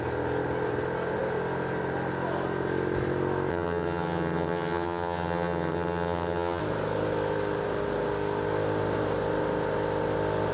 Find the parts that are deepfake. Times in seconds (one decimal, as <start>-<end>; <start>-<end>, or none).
3.5-6.6